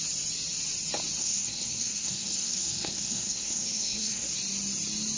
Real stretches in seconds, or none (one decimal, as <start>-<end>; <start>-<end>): 0.0-1.2; 4.3-5.2